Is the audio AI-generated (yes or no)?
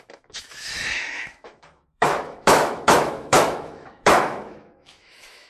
yes